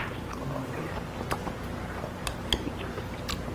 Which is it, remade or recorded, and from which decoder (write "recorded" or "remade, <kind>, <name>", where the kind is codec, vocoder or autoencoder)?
recorded